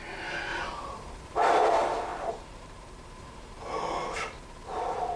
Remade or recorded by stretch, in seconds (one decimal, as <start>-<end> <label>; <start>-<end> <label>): 0.0-0.5 recorded; 0.5-1.5 remade; 1.5-2.1 recorded; 2.1-3.6 remade; 3.6-5.2 recorded